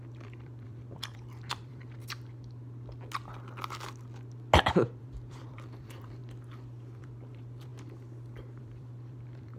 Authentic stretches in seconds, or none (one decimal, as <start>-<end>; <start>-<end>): 2.0-5.0; 6.2-7.0; 7.7-8.6